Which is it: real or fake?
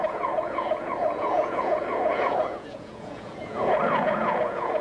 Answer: fake